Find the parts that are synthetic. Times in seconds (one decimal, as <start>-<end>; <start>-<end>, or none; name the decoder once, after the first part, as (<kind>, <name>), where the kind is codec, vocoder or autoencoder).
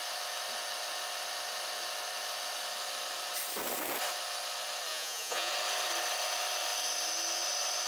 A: 4.9-5.5 (vocoder, Vocos)